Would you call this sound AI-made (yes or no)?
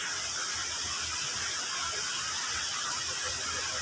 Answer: no